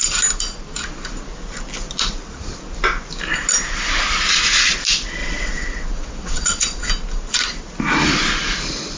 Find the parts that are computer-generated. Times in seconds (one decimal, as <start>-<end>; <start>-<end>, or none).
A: 5.2-6.9